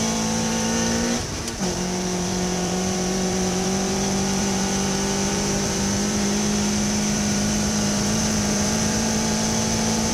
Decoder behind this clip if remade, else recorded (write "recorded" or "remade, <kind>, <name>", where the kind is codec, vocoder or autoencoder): remade, vocoder, BigVGAN v2